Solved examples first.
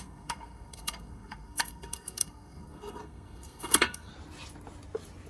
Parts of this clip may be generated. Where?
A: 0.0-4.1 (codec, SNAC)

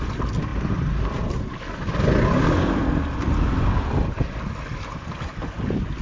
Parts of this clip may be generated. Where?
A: none